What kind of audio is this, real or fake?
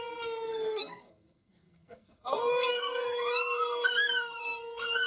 fake